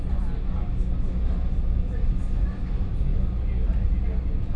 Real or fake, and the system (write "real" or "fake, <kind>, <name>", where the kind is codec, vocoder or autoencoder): real